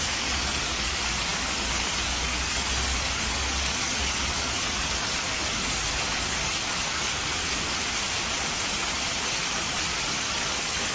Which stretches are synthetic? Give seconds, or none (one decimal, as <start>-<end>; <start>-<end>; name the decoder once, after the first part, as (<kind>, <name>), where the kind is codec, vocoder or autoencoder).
0.0-7.4 (codec, DAC); 10.0-10.9